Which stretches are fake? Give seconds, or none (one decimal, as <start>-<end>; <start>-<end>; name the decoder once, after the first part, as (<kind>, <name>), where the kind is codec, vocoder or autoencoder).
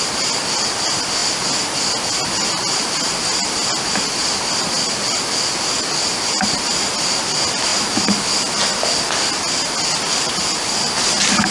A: none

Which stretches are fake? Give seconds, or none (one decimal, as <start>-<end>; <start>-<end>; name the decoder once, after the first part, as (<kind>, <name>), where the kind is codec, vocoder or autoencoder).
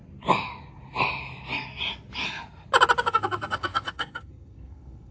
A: 3.1-5.1 (codec, SNAC)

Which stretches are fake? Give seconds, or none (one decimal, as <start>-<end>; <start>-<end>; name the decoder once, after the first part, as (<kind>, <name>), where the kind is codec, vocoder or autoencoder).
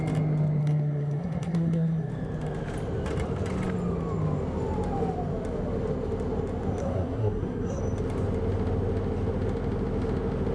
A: 0.6-2.1 (codec, SNAC); 6.8-7.8